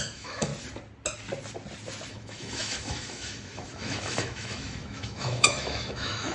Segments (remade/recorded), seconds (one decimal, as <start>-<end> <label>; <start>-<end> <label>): 0.0-0.5 remade; 0.5-2.1 recorded; 2.1-6.3 remade